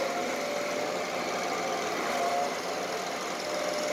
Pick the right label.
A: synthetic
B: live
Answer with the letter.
B